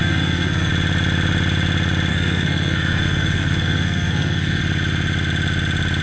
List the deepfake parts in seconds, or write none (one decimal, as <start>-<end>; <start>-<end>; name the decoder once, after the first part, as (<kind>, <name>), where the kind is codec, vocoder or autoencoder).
0.0-0.7 (codec, SNAC); 2.1-4.6